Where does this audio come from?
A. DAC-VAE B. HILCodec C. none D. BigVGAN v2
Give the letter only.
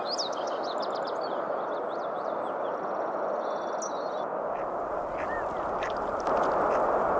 C